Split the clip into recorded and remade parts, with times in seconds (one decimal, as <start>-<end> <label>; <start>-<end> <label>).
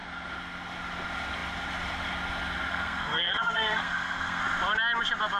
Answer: 0.0-2.7 recorded; 2.7-4.4 remade; 4.4-5.4 recorded